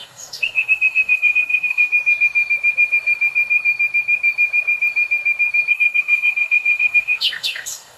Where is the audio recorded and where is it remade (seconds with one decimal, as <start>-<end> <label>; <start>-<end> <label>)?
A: 0.0-1.9 remade; 1.9-5.7 recorded; 5.7-8.0 remade